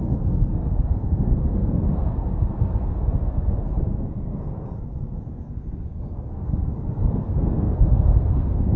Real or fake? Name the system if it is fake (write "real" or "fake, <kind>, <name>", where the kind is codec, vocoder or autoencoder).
fake, codec, SNAC